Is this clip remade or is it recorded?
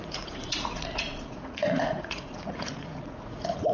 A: remade